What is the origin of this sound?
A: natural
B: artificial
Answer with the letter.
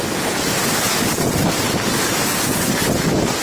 A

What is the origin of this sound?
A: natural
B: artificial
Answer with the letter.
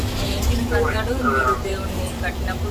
B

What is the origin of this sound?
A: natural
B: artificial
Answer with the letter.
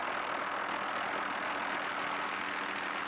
A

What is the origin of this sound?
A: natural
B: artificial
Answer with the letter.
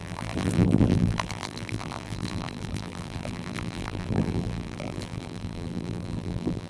B